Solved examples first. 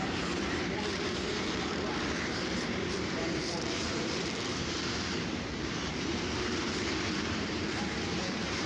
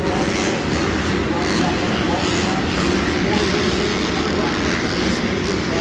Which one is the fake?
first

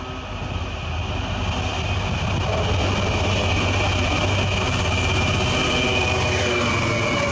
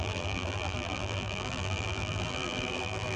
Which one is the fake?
second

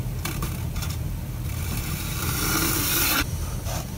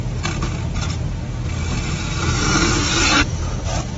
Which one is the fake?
first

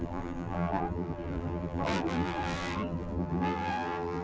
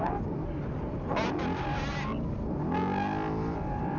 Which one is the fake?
first